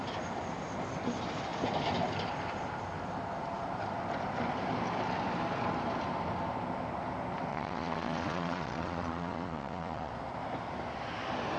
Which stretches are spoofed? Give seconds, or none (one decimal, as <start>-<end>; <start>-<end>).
7.5-10.1